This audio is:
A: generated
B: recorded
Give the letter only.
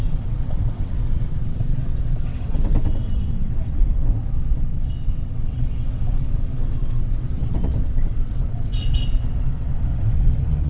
A